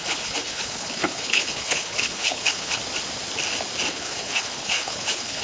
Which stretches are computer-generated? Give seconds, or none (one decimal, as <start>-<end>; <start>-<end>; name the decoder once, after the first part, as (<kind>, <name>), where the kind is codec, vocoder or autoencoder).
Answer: 0.0-2.8 (codec, HILCodec); 3.9-5.4